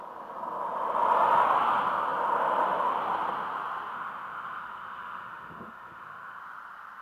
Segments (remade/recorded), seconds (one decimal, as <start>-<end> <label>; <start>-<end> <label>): 0.0-3.9 recorded; 3.9-6.4 remade; 6.4-7.0 recorded